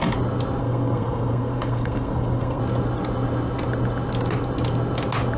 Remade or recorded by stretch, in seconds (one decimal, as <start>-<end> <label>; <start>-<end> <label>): 0.0-0.6 recorded; 0.6-2.6 remade; 2.6-5.4 recorded

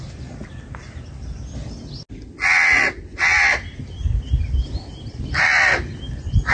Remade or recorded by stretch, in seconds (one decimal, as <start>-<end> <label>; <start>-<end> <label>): 0.0-6.5 recorded

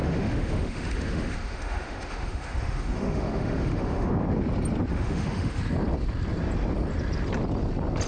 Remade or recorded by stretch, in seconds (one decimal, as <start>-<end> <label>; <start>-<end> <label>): 0.0-4.1 remade; 4.1-4.9 recorded; 4.9-5.6 remade; 5.6-8.1 recorded

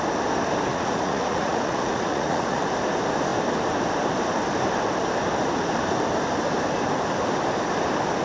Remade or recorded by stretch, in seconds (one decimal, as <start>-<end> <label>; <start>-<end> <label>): 0.0-0.7 recorded; 0.7-2.6 remade; 2.6-8.2 recorded

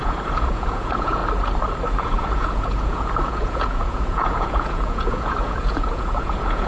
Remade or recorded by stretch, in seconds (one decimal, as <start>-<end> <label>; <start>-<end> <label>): 0.0-1.2 remade; 1.2-2.0 recorded; 2.0-6.7 remade

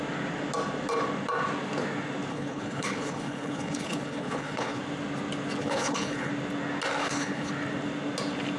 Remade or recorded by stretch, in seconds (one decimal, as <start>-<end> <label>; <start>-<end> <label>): 0.0-2.3 recorded; 2.3-4.8 remade; 4.8-5.6 recorded; 5.6-6.3 remade; 6.3-7.0 recorded; 7.0-7.5 remade; 7.5-8.6 recorded